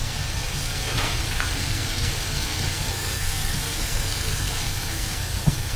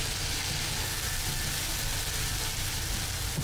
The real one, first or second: second